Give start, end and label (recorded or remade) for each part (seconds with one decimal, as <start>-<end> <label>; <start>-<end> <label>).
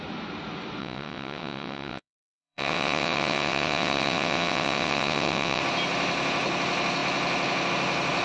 0.0-0.8 recorded; 0.8-5.6 remade; 5.6-8.2 recorded